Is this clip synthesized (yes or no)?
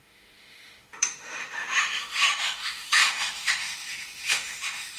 yes